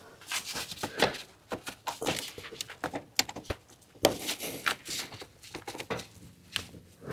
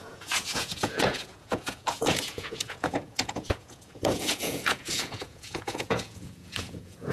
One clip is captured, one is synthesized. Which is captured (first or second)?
first